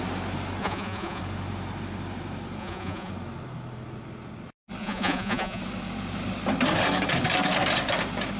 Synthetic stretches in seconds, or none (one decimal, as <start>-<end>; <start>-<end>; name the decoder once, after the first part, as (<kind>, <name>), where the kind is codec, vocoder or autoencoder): 0.6-1.2 (vocoder, Vocos); 2.6-3.1; 4.8-5.6